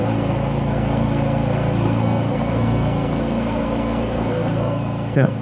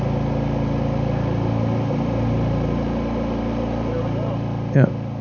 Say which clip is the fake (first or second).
first